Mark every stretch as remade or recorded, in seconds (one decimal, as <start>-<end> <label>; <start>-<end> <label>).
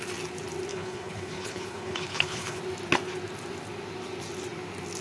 0.0-0.7 recorded; 0.7-2.6 remade; 2.6-5.0 recorded